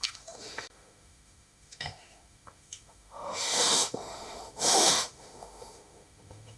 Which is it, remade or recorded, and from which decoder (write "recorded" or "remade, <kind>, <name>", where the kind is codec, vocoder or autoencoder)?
remade, autoencoder, DAC-VAE